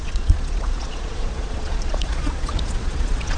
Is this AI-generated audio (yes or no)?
yes